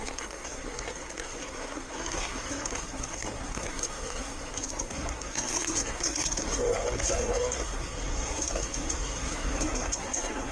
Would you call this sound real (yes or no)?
no